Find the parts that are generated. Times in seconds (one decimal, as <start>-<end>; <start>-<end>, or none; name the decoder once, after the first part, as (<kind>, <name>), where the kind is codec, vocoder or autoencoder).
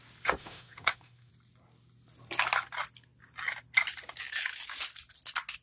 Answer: 0.4-1.3 (autoencoder, DAC-VAE)